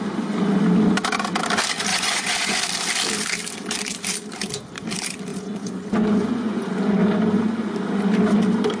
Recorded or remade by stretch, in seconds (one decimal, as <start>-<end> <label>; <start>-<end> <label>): 0.0-1.9 recorded; 1.9-2.6 remade; 2.6-5.3 recorded; 5.3-7.0 remade; 7.0-8.8 recorded